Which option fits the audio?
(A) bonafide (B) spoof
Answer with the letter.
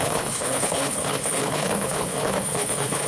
B